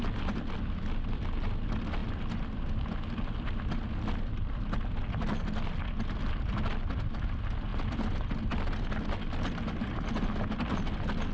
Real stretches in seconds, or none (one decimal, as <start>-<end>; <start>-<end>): 0.0-11.3